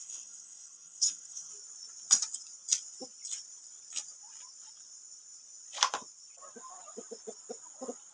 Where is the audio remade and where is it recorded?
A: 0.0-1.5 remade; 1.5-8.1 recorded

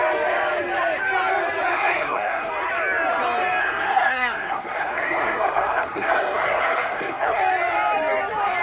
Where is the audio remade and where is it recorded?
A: 0.0-1.7 recorded; 1.7-2.5 remade; 2.5-3.6 recorded; 3.6-7.4 remade; 7.4-8.6 recorded

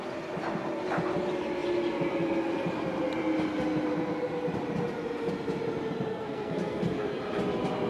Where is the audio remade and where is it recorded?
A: 0.0-6.1 recorded; 6.1-7.2 remade; 7.2-7.9 recorded

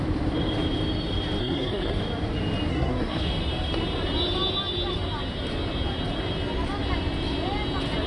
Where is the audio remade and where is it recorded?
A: 0.0-1.4 recorded; 1.4-2.0 remade; 2.0-2.7 recorded; 2.7-3.3 remade; 3.3-8.1 recorded

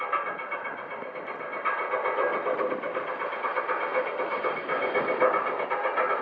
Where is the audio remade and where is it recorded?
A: 0.0-6.2 recorded